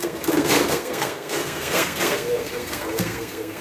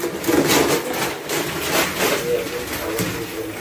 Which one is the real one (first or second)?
second